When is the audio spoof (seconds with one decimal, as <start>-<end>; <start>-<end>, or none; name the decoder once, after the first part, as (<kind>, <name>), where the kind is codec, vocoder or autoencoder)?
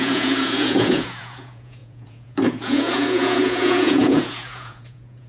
0.0-5.3 (vocoder, Vocos)